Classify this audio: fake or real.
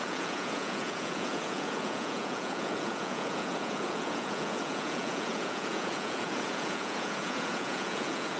fake